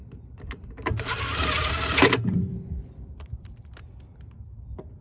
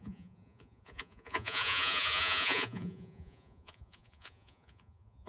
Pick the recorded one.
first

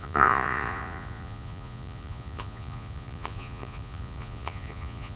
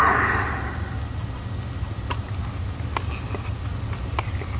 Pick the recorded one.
second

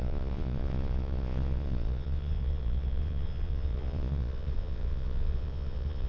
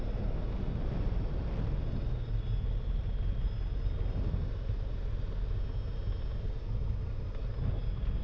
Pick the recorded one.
second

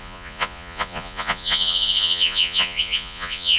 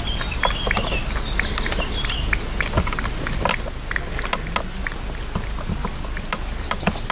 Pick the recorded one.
second